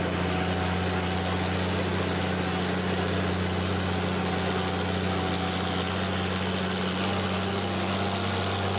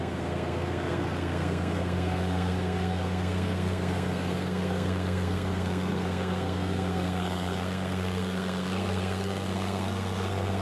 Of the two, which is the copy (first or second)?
second